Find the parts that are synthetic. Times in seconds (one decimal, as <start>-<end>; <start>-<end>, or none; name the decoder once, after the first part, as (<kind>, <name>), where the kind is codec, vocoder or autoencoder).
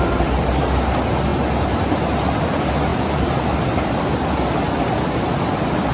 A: 1.3-1.9 (vocoder, BigVGAN v2); 2.9-4.0